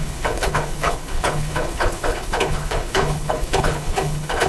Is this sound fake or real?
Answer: fake